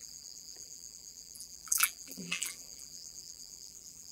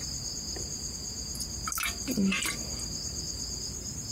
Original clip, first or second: second